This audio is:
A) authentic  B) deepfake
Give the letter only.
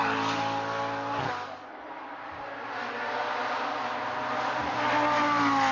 A